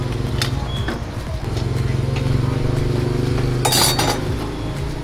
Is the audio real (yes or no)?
yes